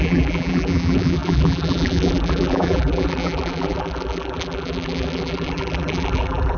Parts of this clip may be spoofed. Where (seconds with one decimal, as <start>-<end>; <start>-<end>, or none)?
0.0-6.6